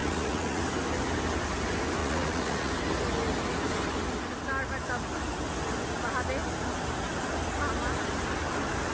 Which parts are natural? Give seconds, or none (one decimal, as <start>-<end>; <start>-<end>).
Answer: 0.6-2.0; 2.7-8.9